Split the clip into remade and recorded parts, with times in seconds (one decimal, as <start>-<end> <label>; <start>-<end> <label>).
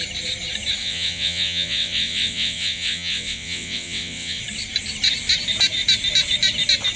0.0-0.8 recorded; 0.8-4.4 remade; 4.4-7.0 recorded